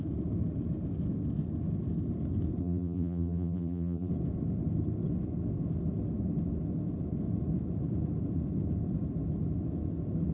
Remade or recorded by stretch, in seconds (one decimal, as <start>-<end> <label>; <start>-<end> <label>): 0.0-2.6 recorded; 2.6-4.1 remade; 4.1-10.3 recorded